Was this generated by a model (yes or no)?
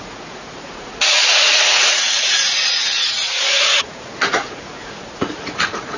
yes